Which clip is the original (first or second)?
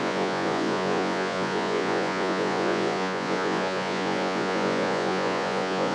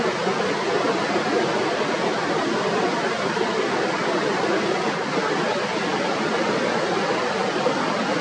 second